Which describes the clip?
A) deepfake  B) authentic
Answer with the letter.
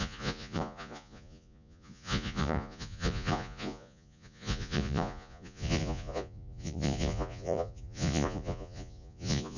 A